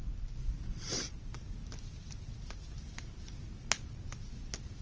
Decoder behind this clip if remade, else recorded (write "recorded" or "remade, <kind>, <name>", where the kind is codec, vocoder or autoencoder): recorded